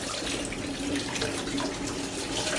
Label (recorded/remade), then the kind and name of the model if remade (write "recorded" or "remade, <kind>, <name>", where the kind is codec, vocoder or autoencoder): recorded